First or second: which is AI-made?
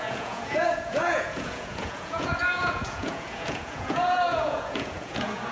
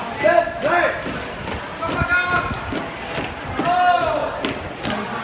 first